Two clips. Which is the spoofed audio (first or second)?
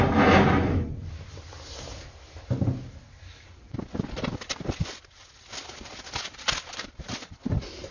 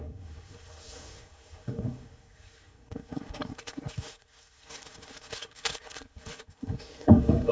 second